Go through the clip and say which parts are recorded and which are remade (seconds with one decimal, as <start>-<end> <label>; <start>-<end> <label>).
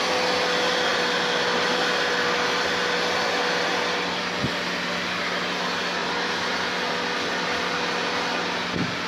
0.0-9.1 recorded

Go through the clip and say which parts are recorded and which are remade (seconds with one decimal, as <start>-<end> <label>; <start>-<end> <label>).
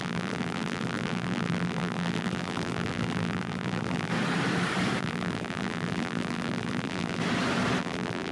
0.0-4.1 remade; 4.1-5.0 recorded; 5.0-7.2 remade; 7.2-7.8 recorded; 7.8-8.3 remade